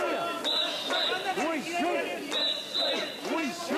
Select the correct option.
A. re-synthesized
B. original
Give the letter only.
B